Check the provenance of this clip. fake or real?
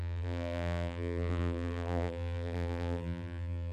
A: fake